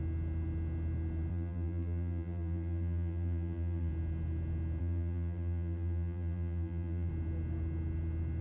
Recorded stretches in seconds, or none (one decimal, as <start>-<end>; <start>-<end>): 0.0-1.3; 3.9-4.8; 7.1-8.4

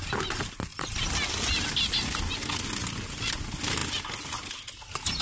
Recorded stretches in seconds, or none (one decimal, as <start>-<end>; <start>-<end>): 0.0-5.2